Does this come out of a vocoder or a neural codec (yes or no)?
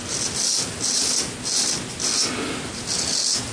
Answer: no